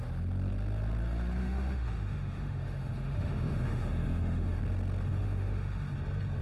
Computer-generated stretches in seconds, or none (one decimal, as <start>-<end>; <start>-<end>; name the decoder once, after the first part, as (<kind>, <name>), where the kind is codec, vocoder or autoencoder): 1.4-4.6 (autoencoder, DAC-VAE); 5.1-5.9